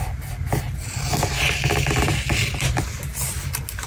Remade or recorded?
recorded